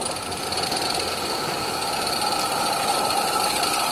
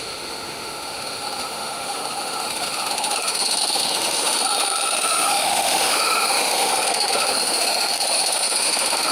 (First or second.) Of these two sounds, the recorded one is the first